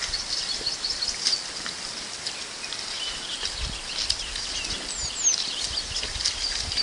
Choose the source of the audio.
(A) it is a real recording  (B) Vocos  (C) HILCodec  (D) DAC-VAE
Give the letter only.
A